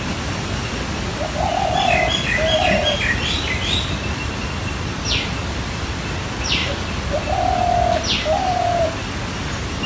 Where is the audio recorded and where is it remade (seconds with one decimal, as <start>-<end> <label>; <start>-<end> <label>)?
0.0-6.6 recorded; 6.6-7.4 remade; 7.4-9.9 recorded

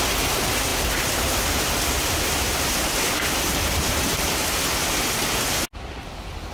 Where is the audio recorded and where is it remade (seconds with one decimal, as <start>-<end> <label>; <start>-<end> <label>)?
0.0-6.5 recorded

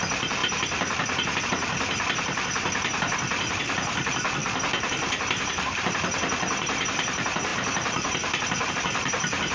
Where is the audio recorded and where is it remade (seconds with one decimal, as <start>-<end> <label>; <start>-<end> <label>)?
0.0-9.5 remade

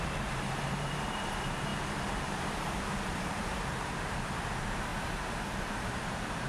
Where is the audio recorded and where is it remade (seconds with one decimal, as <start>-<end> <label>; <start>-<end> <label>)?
0.0-4.9 remade; 4.9-5.4 recorded; 5.4-6.5 remade